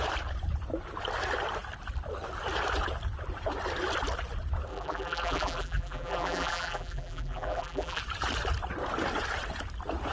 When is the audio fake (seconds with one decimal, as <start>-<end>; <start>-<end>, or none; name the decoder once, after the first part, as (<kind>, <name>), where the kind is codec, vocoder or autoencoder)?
4.7-8.0 (vocoder, BigVGAN v2)